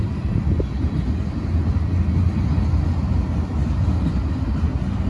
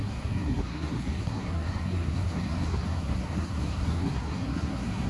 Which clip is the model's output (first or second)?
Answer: second